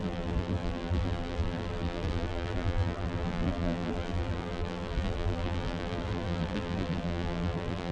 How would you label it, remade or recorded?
remade